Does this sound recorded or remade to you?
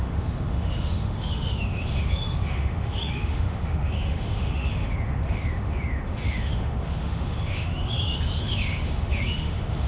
remade